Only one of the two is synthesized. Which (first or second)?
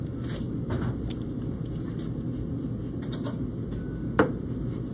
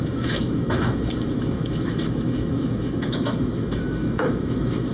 second